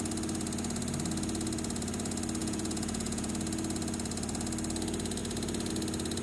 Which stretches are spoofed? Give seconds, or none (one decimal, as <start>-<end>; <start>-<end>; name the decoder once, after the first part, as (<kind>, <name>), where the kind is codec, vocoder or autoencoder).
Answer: 2.4-3.3 (vocoder, Vocos)